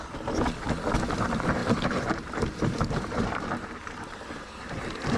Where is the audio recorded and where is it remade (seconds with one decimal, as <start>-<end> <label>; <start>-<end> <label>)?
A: 0.0-1.6 recorded; 1.6-4.7 remade; 4.7-5.2 recorded